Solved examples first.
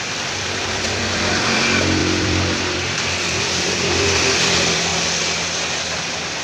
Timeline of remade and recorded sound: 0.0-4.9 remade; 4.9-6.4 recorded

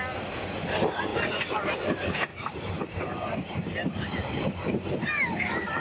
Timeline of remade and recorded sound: 0.0-1.1 recorded; 1.1-1.7 remade; 1.7-2.3 recorded; 2.3-5.8 remade

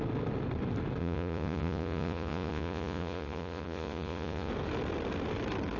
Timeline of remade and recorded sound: 0.0-1.0 recorded; 1.0-4.5 remade; 4.5-5.8 recorded

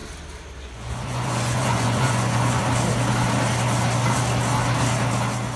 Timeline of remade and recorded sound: 0.0-0.6 recorded; 0.6-2.6 remade; 2.6-5.6 recorded